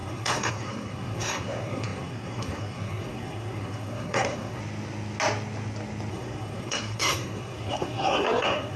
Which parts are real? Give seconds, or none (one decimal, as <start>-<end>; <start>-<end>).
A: 4.6-6.1